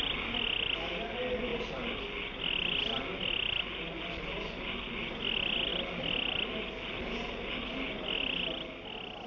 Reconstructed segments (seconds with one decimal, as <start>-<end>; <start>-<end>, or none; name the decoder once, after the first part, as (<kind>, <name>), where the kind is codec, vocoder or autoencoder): none